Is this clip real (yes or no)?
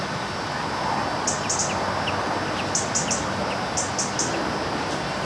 yes